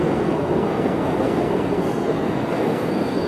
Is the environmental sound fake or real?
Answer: fake